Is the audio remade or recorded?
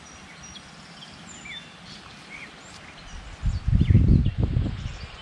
recorded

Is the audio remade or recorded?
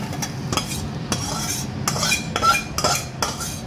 recorded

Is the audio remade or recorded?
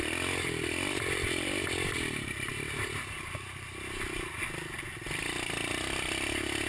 recorded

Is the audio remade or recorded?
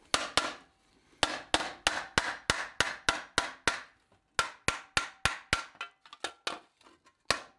recorded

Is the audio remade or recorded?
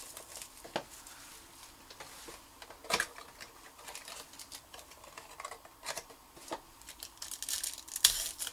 recorded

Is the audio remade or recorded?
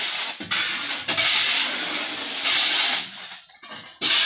recorded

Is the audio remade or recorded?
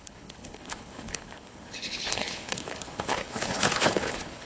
remade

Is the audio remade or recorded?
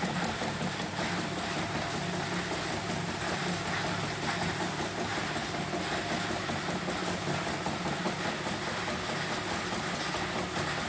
recorded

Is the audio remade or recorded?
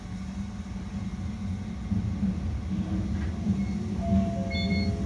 recorded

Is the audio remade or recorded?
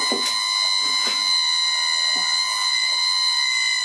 recorded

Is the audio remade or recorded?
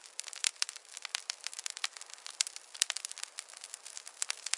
recorded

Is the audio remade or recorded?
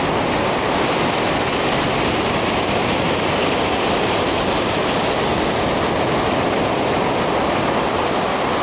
recorded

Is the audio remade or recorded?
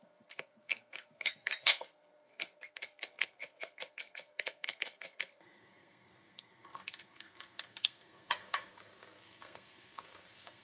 remade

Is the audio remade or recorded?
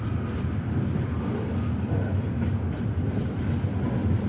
recorded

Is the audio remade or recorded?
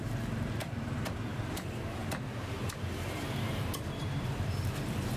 remade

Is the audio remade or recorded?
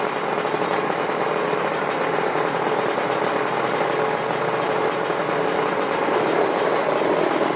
recorded